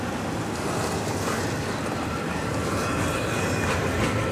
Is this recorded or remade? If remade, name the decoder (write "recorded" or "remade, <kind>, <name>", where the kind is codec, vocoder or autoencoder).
recorded